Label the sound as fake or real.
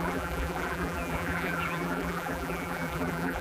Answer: fake